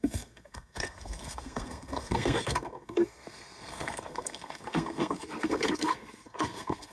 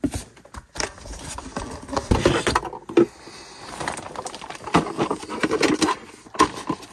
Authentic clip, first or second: second